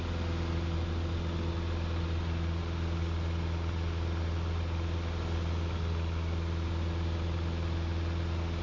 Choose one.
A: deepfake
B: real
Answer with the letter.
B